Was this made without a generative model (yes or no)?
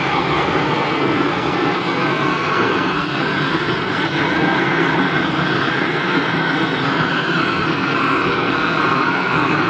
no